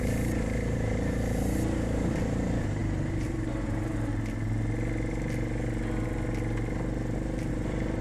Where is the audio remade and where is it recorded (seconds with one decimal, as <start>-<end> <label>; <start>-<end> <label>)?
0.0-4.1 remade; 4.1-7.5 recorded; 7.5-8.0 remade